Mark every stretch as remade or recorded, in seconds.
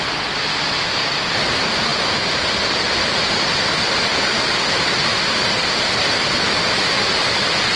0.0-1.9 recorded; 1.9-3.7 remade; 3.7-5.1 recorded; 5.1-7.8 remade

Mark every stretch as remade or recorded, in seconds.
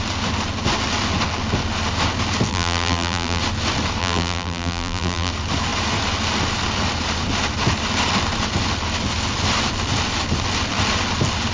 0.0-2.5 recorded; 2.5-3.4 remade; 3.4-4.0 recorded; 4.0-5.3 remade; 5.3-11.5 recorded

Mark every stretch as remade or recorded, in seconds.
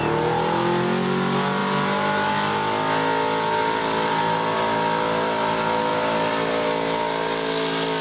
0.0-8.0 recorded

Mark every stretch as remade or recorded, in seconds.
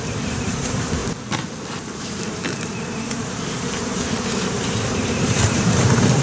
0.0-1.0 remade; 1.0-1.9 recorded; 1.9-2.4 remade; 2.4-3.1 recorded; 3.1-6.2 remade